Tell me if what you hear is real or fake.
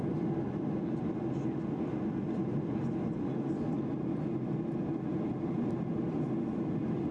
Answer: real